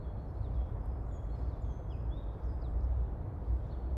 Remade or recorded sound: remade